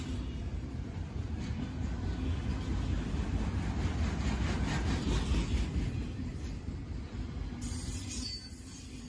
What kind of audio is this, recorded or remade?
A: recorded